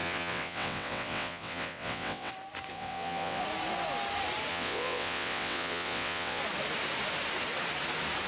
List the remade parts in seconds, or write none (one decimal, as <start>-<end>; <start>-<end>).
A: 0.0-2.3; 2.7-3.4; 4.5-6.4